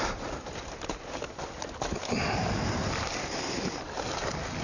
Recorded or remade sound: recorded